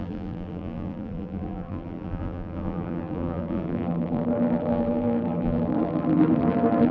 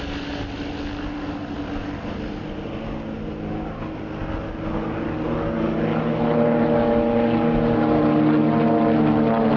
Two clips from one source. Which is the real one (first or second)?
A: second